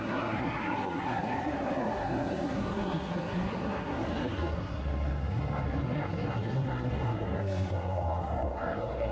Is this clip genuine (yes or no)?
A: no